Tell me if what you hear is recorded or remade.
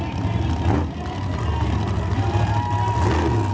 recorded